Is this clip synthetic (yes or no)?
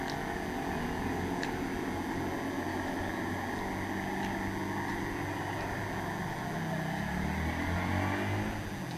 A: no